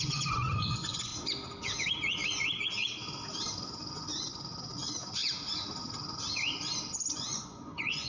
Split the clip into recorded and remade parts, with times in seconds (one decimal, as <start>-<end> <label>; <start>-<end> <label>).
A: 0.0-1.1 remade; 1.1-3.9 recorded; 3.9-5.2 remade; 5.2-7.1 recorded; 7.1-8.1 remade